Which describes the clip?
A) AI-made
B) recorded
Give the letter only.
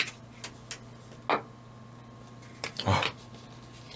B